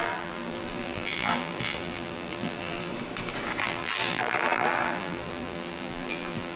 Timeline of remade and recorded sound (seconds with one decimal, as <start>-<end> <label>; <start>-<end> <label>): 0.0-2.9 remade; 2.9-3.6 recorded; 3.6-6.6 remade